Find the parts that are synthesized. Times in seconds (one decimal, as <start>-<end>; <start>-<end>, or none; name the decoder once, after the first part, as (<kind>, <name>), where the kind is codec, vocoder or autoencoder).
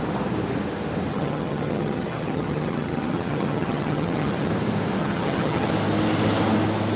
1.1-4.5 (vocoder, HiFi-GAN); 5.0-5.7